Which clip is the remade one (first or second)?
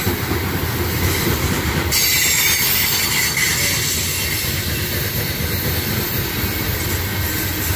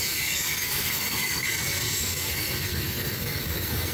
second